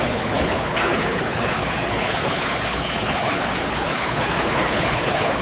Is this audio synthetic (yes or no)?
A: yes